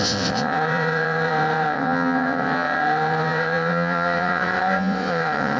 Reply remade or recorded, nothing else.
remade